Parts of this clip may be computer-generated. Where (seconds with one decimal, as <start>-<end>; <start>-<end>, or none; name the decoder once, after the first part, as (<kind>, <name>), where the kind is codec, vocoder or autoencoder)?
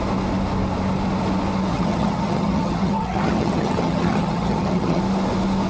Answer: 1.7-5.0 (vocoder, HiFi-GAN)